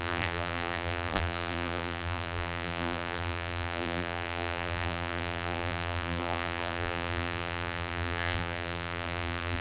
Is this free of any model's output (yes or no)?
no